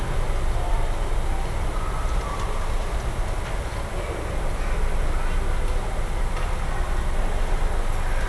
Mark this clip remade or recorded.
recorded